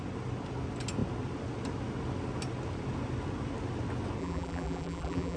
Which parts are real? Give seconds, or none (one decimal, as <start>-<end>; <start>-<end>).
0.0-4.2